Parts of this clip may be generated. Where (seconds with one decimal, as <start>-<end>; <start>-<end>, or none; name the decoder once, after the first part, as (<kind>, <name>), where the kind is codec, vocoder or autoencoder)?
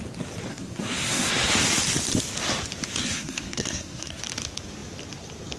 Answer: 0.5-1.3 (codec, SNAC); 3.0-4.2